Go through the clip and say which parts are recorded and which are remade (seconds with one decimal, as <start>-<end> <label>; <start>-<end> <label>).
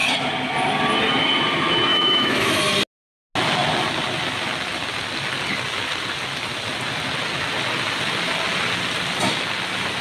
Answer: 0.0-1.9 recorded; 1.9-2.6 remade; 2.6-10.0 recorded